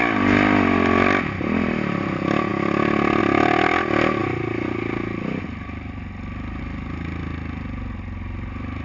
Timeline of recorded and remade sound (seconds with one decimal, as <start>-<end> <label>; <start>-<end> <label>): 0.0-8.8 recorded